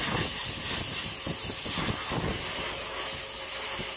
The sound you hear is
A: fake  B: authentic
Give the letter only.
B